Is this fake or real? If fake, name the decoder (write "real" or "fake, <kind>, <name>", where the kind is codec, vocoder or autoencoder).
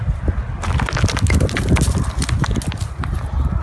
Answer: real